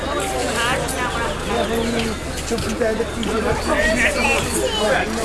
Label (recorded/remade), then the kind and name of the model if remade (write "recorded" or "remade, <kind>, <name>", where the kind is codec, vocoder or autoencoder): recorded